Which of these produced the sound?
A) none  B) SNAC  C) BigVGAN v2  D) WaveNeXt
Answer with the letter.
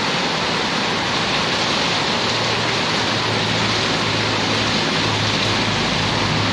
A